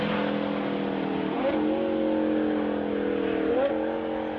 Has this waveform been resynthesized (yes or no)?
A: no